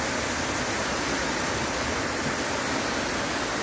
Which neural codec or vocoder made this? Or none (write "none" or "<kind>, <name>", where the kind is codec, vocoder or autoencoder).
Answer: none